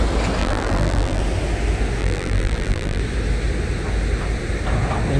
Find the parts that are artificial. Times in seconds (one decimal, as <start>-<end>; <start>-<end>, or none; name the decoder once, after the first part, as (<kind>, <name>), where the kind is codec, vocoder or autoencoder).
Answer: 0.4-1.2 (vocoder, BigVGAN v2); 2.0-3.0